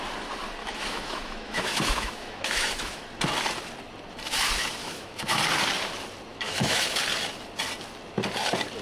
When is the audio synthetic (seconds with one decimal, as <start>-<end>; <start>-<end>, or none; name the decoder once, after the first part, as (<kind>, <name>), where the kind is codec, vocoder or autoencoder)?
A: 0.6-3.0 (autoencoder, DAC-VAE); 4.8-5.4; 6.3-7.0

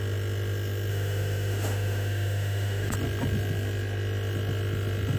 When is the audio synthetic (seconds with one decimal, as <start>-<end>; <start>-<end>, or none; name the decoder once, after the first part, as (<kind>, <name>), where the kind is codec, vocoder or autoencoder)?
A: 0.9-2.9 (autoencoder, DAC-VAE)

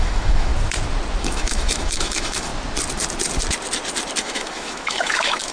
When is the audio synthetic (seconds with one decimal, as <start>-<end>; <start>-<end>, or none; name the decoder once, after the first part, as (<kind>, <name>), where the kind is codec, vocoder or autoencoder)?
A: 0.0-0.5 (autoencoder, DAC-VAE); 1.2-2.5; 4.2-5.5

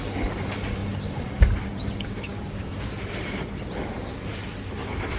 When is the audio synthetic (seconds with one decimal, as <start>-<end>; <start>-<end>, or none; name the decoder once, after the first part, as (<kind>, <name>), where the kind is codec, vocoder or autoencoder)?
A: none

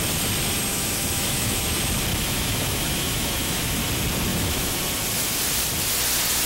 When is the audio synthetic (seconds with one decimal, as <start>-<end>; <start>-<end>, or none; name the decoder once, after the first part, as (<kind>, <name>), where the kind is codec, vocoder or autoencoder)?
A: 0.7-1.6 (autoencoder, DAC-VAE); 2.1-3.8; 4.3-4.8

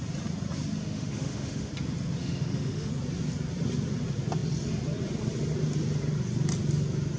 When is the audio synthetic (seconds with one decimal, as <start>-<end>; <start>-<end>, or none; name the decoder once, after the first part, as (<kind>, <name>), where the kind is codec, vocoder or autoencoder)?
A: 0.8-1.7 (autoencoder, DAC-VAE); 2.2-2.9